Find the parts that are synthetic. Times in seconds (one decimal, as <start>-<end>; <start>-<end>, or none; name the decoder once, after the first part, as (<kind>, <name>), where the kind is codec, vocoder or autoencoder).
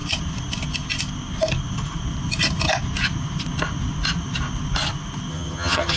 5.3-6.0 (vocoder, HiFi-GAN)